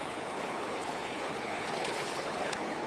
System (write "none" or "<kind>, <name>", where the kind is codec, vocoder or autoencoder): codec, HILCodec